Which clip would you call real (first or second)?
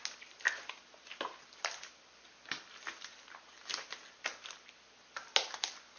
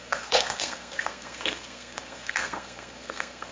first